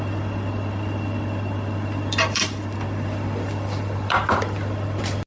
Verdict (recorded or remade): remade